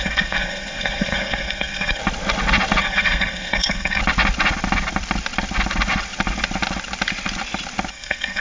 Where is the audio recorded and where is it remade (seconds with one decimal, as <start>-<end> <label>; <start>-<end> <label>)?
0.0-2.0 remade; 2.0-2.8 recorded; 2.8-4.0 remade; 4.0-7.9 recorded; 7.9-8.4 remade